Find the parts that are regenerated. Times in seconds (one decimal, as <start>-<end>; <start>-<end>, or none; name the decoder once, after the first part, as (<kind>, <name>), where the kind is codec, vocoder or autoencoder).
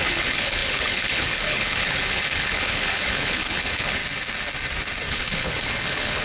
0.0-4.0 (codec, HILCodec); 5.1-6.2